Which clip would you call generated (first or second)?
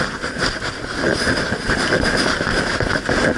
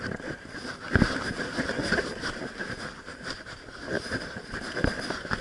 second